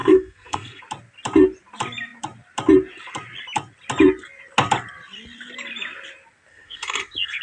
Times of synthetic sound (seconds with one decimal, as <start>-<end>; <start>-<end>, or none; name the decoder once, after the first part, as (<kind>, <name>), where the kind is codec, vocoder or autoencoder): 0.0-0.8 (codec, SNAC); 6.5-7.4

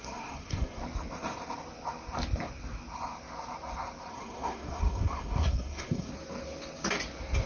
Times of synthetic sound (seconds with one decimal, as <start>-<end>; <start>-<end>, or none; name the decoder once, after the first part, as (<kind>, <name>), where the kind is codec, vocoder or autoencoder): 0.0-0.8 (codec, SNAC); 4.1-6.1